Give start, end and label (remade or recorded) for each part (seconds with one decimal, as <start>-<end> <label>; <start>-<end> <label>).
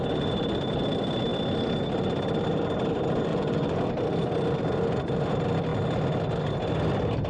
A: 0.0-3.3 recorded; 3.3-3.8 remade; 3.8-7.3 recorded